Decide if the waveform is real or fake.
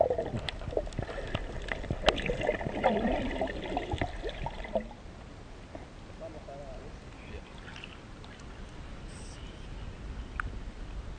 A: real